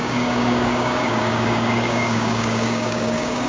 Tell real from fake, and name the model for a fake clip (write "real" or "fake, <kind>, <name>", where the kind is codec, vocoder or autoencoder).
fake, codec, DAC